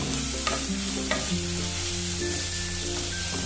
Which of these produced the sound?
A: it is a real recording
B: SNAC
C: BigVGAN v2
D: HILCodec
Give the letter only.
A